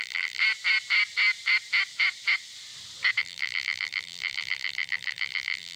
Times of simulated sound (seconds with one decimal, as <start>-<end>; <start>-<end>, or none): 0.0-0.4; 3.2-5.8